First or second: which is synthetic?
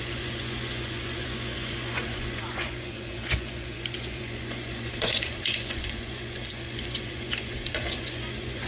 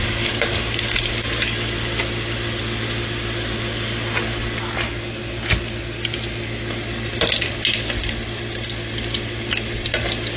first